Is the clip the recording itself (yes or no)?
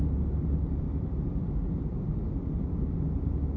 yes